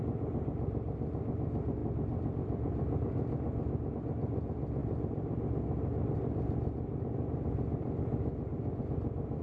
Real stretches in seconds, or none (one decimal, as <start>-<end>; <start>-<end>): 0.0-1.8; 3.9-4.8; 8.8-9.4